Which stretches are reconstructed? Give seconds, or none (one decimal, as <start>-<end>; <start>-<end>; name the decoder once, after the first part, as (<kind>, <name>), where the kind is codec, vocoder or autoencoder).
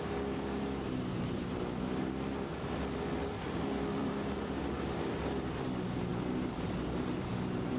1.1-5.2 (vocoder, BigVGAN v2); 6.1-7.8